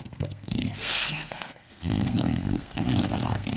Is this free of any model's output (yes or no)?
no